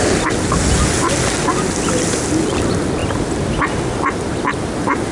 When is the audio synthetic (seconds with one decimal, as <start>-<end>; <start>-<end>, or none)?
none